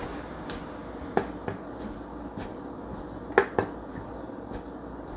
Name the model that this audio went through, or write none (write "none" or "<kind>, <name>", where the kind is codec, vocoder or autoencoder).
none